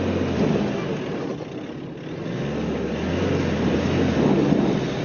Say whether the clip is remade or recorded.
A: recorded